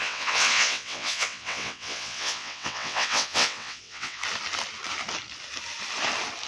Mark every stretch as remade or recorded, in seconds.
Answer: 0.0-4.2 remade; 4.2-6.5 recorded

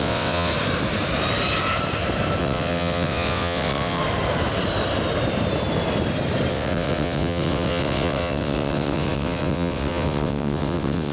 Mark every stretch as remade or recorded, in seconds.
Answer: 0.0-0.5 remade; 0.5-2.4 recorded; 2.4-4.0 remade; 4.0-6.5 recorded; 6.5-11.1 remade

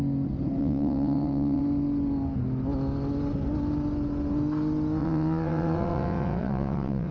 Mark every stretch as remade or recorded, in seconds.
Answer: 0.0-0.6 recorded; 0.6-1.6 remade; 1.6-5.0 recorded; 5.0-7.1 remade

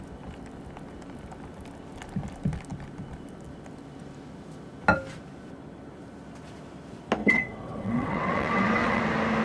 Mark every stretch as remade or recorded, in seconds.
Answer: 0.0-7.2 recorded; 7.2-9.0 remade; 9.0-9.4 recorded

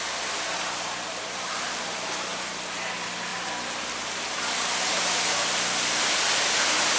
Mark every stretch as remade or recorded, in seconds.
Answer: 0.0-7.0 recorded